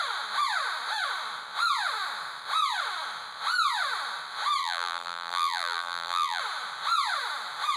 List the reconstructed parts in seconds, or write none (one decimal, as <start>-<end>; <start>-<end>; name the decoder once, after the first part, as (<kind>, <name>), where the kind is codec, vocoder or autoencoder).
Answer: 4.6-6.4 (vocoder, BigVGAN v2)